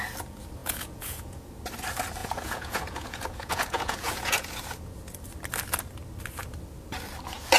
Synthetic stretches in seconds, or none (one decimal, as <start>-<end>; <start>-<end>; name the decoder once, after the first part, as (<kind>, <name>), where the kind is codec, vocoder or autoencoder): 0.6-1.5 (vocoder, Vocos); 2.2-4.5